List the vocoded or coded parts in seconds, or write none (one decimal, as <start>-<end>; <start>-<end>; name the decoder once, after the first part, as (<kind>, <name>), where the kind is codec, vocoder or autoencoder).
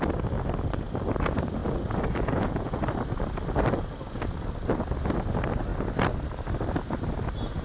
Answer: 1.6-2.8 (vocoder, Vocos)